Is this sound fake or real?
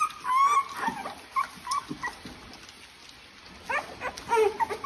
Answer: real